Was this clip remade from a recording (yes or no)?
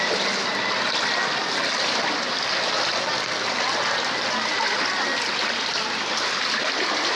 no